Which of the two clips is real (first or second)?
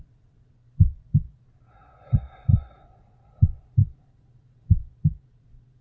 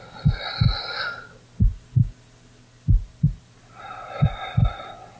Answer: second